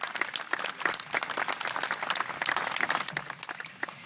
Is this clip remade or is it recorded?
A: recorded